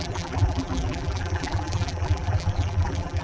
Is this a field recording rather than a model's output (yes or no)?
no